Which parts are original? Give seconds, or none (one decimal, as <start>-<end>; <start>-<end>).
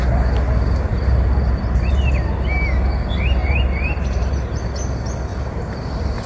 0.0-0.9; 2.1-3.4; 4.6-5.3